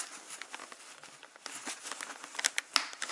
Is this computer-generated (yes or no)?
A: no